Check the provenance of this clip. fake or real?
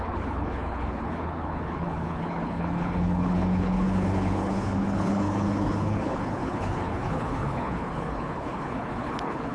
fake